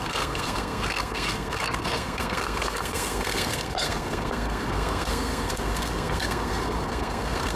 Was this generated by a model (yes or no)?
yes